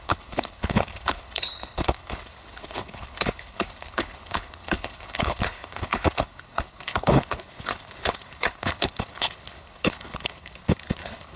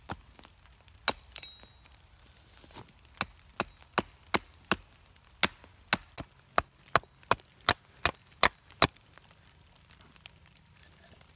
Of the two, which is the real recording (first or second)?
second